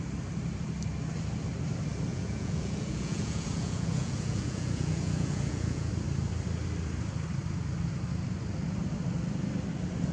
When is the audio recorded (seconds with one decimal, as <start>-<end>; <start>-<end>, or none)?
0.0-2.1; 5.9-10.1

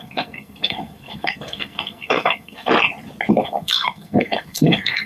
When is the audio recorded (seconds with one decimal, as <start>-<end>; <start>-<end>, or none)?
2.7-3.3

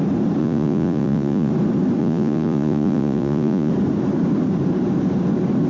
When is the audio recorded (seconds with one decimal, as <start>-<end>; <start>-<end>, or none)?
0.0-0.4; 1.5-2.0; 3.7-5.7